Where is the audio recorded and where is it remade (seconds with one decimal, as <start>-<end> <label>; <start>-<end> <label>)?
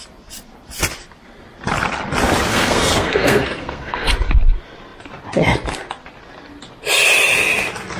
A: 0.0-2.5 recorded; 2.5-4.1 remade; 4.1-8.0 recorded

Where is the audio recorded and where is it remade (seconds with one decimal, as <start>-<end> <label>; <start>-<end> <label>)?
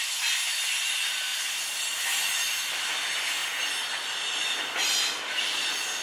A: 0.0-6.0 recorded